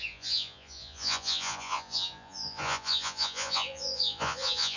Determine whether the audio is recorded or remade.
remade